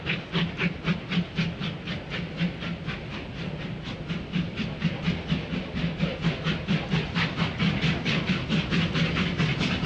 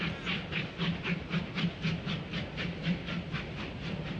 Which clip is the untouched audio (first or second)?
first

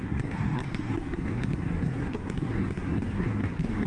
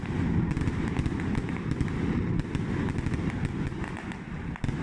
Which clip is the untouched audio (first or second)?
second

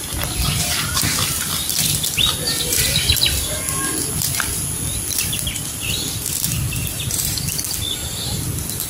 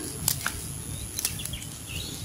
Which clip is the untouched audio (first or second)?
second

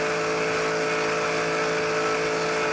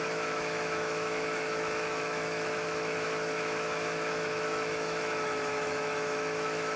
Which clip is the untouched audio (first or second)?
first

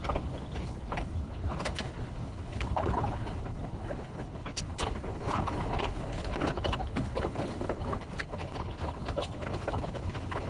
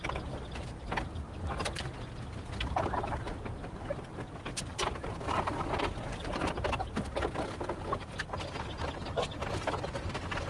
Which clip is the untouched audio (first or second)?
second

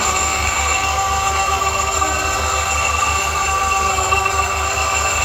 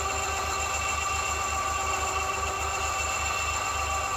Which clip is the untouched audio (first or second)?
second